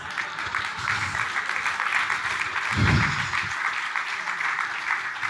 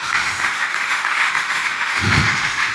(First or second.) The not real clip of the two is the second